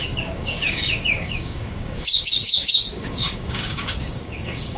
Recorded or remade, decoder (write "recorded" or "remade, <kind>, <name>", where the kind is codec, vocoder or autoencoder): remade, codec, DAC